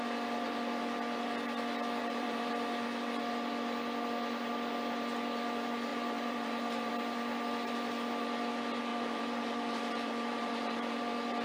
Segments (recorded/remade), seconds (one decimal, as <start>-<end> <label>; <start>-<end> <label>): 0.0-2.0 recorded; 2.0-2.5 remade; 2.5-5.9 recorded; 5.9-6.9 remade; 6.9-8.9 recorded; 8.9-11.0 remade; 11.0-11.4 recorded